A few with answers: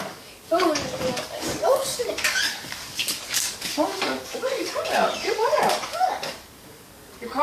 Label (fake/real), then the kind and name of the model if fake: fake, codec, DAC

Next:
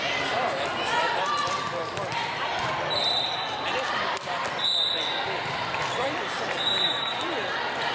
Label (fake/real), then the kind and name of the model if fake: fake, vocoder, BigVGAN v2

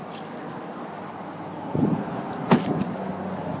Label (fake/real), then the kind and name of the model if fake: real